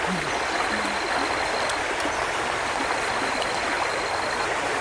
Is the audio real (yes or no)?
yes